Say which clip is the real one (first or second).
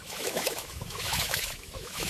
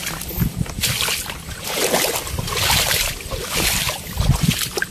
second